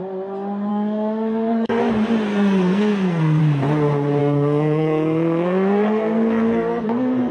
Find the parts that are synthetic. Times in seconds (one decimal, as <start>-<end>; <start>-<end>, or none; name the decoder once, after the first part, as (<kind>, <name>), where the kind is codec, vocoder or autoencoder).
0.7-1.8 (codec, SNAC); 2.3-3.4; 4.2-7.3